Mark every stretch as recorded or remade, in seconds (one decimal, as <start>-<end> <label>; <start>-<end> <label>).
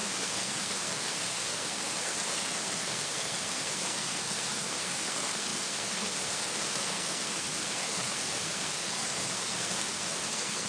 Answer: 0.0-10.7 remade